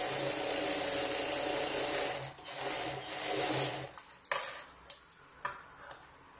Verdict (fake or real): real